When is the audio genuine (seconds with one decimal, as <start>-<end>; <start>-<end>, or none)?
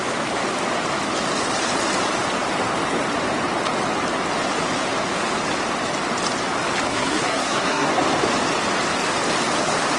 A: 0.0-6.9; 7.9-10.0